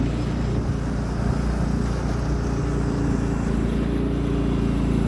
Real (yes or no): yes